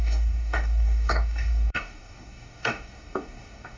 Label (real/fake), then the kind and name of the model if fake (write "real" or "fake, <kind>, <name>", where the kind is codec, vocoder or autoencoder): fake, codec, DAC